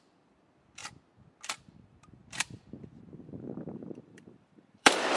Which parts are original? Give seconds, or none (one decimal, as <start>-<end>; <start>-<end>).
0.8-1.6; 2.2-3.2